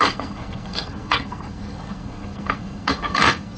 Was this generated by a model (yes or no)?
yes